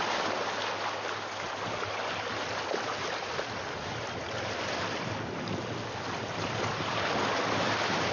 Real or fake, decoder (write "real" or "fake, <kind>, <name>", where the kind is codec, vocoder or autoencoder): real